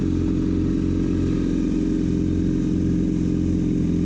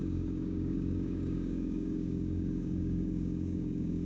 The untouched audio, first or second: first